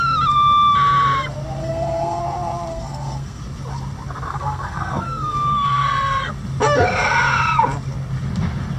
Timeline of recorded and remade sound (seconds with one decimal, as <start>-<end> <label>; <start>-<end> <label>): 0.0-1.6 recorded; 1.6-2.2 remade; 2.2-2.7 recorded; 2.7-3.4 remade; 3.4-4.3 recorded; 4.3-6.3 remade; 6.3-8.8 recorded